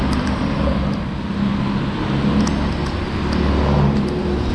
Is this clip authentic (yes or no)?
yes